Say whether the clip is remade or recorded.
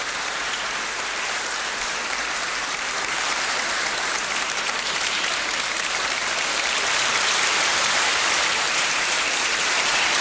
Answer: remade